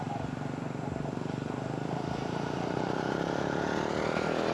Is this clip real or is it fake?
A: real